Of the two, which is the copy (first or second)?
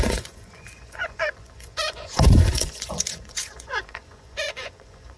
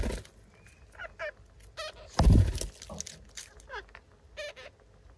first